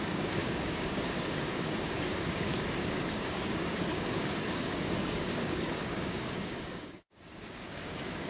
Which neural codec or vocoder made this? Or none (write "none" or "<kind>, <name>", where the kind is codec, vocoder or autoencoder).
codec, DAC